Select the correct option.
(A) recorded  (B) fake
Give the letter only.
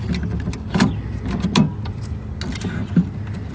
A